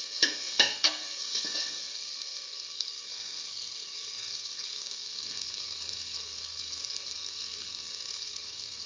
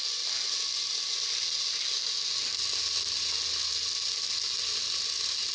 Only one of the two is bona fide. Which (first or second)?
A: second